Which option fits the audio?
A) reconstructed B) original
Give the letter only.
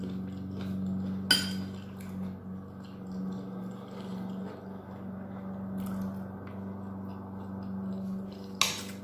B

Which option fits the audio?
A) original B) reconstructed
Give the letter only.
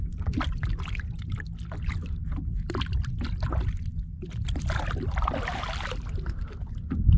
A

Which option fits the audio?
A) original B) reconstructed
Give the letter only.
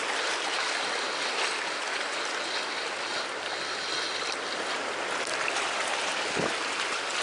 A